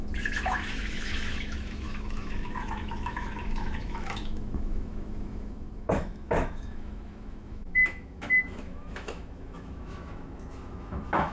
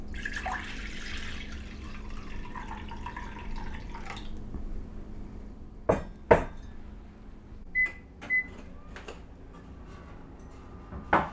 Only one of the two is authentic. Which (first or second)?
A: second